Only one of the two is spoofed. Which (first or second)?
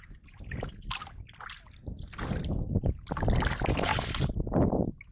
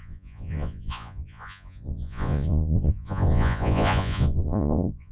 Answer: second